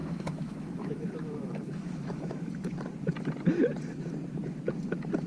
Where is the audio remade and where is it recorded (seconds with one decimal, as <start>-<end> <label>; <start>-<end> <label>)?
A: 0.0-2.5 remade; 2.5-5.3 recorded